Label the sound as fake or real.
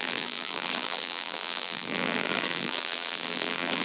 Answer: fake